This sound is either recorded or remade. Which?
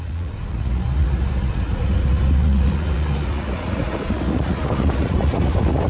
remade